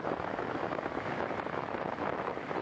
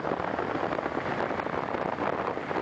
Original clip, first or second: second